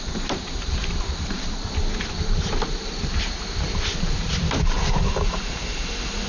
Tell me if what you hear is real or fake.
fake